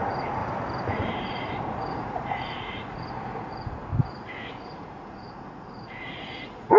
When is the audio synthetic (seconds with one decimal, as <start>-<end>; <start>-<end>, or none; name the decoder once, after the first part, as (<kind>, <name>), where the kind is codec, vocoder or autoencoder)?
0.0-0.4 (vocoder, Vocos); 0.9-3.9; 4.5-6.8